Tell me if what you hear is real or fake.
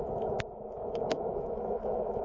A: fake